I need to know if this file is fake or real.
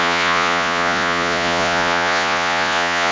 fake